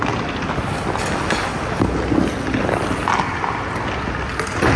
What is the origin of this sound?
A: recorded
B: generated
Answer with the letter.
A